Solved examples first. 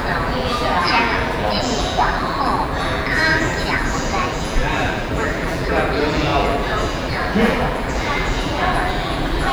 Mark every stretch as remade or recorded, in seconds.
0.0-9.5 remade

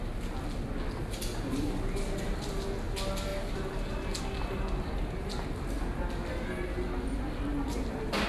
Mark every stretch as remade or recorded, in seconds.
0.0-8.3 recorded

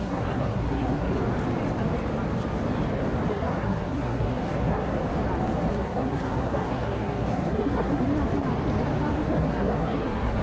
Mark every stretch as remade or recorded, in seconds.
0.0-1.1 remade; 1.1-3.3 recorded; 3.3-5.0 remade; 5.0-5.7 recorded; 5.7-8.1 remade; 8.1-9.3 recorded; 9.3-10.4 remade

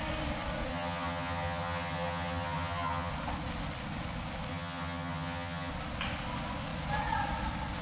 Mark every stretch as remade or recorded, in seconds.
0.0-0.7 recorded; 0.7-3.1 remade; 3.1-4.5 recorded; 4.5-5.7 remade; 5.7-7.8 recorded

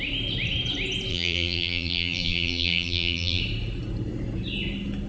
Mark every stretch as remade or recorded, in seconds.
0.0-1.1 recorded; 1.1-3.4 remade; 3.4-5.1 recorded